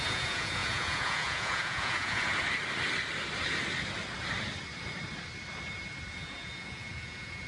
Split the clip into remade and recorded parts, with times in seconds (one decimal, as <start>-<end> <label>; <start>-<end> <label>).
0.0-2.3 remade; 2.3-6.1 recorded; 6.1-7.5 remade